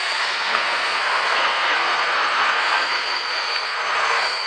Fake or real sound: fake